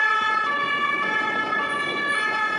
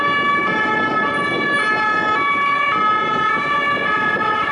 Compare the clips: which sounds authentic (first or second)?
second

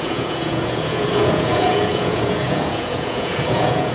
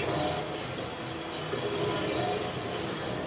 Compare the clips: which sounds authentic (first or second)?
second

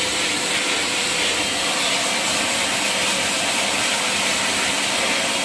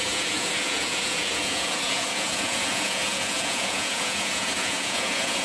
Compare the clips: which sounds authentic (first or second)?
first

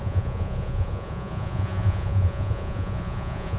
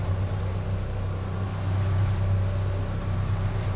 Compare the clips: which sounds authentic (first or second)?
second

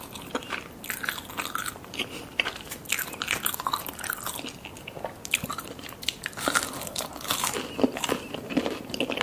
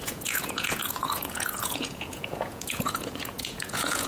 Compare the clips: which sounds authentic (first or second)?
first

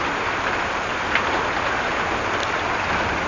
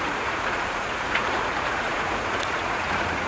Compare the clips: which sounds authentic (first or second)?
first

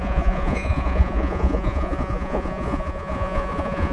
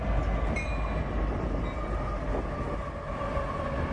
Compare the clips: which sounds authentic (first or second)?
second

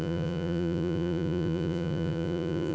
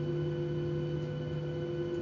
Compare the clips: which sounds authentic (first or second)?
second